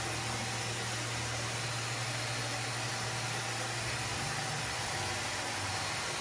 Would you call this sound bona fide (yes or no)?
yes